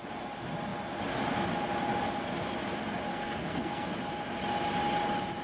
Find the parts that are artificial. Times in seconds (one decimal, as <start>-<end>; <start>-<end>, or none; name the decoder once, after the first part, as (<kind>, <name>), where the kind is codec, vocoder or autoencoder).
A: 3.1-3.9 (codec, SNAC)

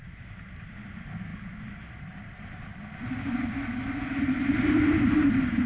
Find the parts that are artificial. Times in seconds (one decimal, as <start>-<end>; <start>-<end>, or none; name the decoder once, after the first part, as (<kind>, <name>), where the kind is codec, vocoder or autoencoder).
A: none

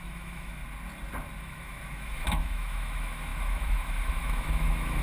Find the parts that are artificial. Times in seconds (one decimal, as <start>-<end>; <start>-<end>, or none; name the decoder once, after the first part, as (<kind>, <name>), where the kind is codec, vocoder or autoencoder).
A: 0.0-0.6 (autoencoder, DAC-VAE); 1.4-5.0

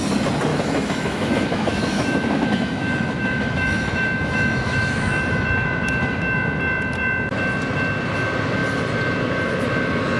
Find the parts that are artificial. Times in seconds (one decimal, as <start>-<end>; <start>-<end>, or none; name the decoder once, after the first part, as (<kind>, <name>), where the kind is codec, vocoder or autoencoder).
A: 0.5-5.2 (autoencoder, DAC-VAE)

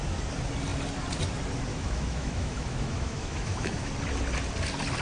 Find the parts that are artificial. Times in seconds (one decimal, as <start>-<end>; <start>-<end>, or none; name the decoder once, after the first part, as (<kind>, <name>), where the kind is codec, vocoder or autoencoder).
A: 1.7-3.9 (autoencoder, DAC-VAE)

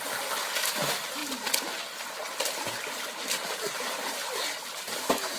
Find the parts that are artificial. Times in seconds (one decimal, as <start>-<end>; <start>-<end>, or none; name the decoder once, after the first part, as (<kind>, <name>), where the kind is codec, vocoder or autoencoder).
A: 0.0-1.2 (vocoder, BigVGAN v2); 3.7-5.4